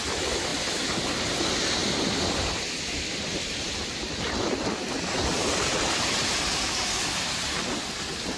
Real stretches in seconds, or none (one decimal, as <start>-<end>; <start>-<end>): 0.0-8.4